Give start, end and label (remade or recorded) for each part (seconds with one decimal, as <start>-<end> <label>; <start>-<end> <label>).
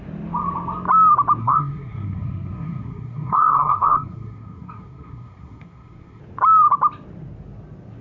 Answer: 0.0-1.4 recorded; 1.4-6.2 remade; 6.2-8.0 recorded